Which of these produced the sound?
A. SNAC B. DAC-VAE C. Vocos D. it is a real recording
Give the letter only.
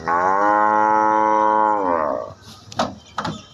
D